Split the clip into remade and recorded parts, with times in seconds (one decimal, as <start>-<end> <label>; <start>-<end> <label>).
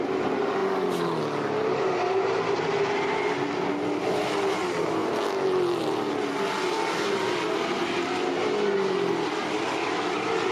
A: 0.0-10.5 recorded